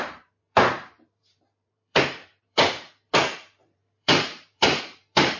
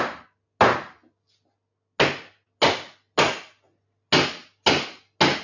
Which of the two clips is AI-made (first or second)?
first